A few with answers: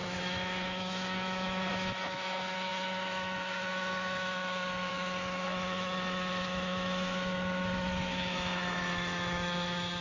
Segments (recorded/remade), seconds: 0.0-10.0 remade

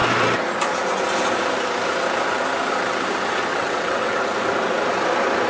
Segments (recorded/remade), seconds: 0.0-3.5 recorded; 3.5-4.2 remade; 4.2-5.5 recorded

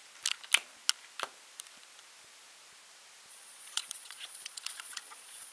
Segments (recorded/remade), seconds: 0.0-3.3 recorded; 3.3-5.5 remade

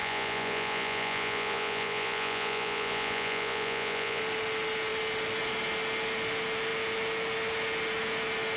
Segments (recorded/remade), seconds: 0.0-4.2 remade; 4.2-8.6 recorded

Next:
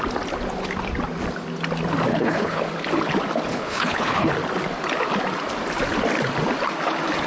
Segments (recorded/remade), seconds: 0.0-2.1 recorded; 2.1-2.6 remade; 2.6-3.5 recorded; 3.5-4.3 remade; 4.3-7.3 recorded

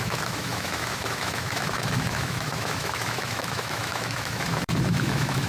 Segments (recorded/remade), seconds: 0.0-5.5 remade

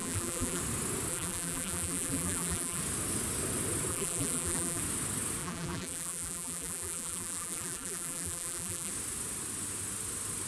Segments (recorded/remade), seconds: 0.0-0.6 remade; 0.6-1.1 recorded; 1.1-2.8 remade; 2.8-3.9 recorded; 3.9-4.8 remade; 4.8-5.4 recorded; 5.4-8.9 remade; 8.9-10.5 recorded